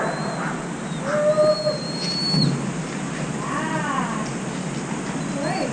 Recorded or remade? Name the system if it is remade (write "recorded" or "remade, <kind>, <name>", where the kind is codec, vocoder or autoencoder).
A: recorded